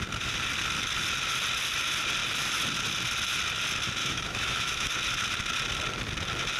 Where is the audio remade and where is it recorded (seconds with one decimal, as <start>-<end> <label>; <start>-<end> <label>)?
0.0-4.0 recorded; 4.0-4.9 remade; 4.9-6.6 recorded